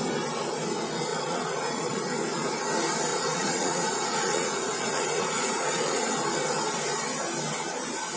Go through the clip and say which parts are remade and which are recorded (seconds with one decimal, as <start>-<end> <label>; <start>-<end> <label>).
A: 0.0-1.1 recorded; 1.1-2.0 remade; 2.0-3.1 recorded; 3.1-6.1 remade; 6.1-8.2 recorded